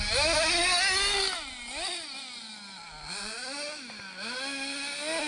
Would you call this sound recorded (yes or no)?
yes